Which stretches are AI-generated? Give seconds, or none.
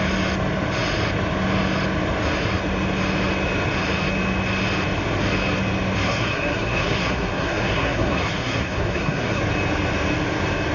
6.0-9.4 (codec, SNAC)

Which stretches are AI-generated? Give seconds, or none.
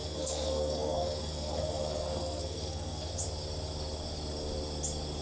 0.0-3.1 (codec, SNAC)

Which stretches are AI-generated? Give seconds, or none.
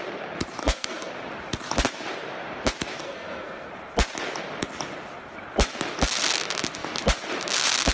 0.6-1.1 (codec, SNAC); 3.0-3.7